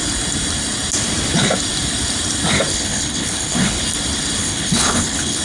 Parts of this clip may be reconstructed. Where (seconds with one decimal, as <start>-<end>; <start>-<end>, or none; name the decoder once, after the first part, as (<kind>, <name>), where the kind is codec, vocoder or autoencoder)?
2.7-3.8 (codec, HILCodec); 4.4-5.4